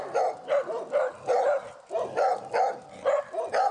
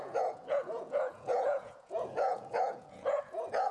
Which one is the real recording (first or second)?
first